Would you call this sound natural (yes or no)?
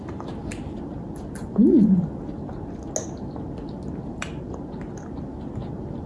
yes